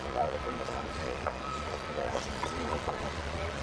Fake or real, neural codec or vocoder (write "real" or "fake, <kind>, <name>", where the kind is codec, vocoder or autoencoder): fake, vocoder, Vocos